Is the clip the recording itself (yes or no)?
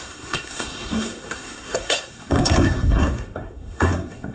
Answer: no